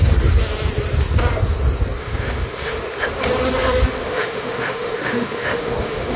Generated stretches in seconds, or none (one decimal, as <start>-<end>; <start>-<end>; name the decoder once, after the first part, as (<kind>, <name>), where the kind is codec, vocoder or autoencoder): 2.0-2.8 (autoencoder, DAC-VAE); 4.0-6.2